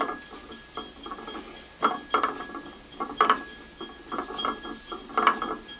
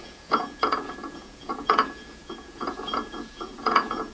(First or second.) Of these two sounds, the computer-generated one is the second